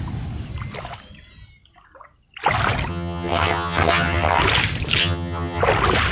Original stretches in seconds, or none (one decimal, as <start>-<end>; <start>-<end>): 0.0-2.9; 4.4-5.0; 5.6-6.1